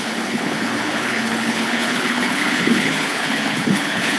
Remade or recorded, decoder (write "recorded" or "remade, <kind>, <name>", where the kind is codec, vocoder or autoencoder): remade, codec, HILCodec